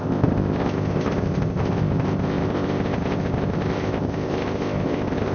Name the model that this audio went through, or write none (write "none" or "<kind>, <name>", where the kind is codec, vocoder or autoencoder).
codec, ZipCodec